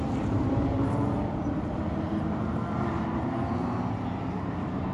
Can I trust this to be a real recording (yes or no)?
no